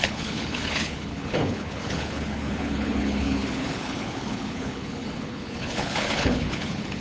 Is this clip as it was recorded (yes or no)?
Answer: no